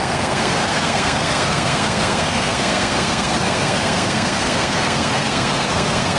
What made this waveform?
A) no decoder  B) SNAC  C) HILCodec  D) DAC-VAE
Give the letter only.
B